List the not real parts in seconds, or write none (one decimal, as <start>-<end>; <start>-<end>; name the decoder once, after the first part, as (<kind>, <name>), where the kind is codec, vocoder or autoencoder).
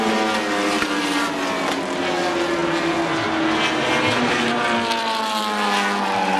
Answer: none